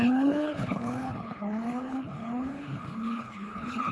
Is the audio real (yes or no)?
no